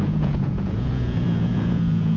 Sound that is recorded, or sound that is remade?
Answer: remade